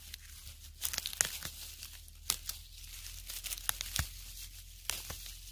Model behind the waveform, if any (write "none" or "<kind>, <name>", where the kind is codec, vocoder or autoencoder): none